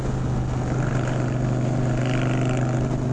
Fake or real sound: real